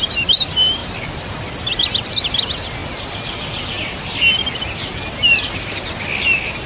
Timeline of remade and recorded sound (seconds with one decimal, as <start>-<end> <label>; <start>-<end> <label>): 0.0-6.7 recorded